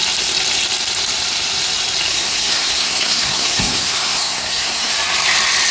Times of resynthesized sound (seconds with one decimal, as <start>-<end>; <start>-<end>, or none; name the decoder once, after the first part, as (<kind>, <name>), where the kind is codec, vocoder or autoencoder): 2.1-4.9 (codec, SNAC)